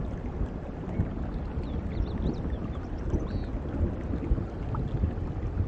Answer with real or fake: real